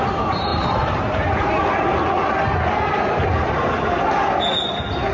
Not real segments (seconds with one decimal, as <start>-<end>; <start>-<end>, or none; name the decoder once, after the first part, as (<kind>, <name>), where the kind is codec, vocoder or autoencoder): 0.5-1.6 (vocoder, BigVGAN v2); 3.3-4.0